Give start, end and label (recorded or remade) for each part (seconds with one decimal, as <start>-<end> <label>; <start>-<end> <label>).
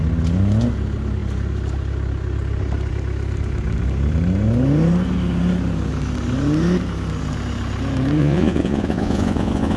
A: 0.0-8.2 recorded; 8.2-9.8 remade